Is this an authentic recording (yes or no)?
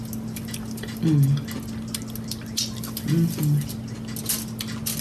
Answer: yes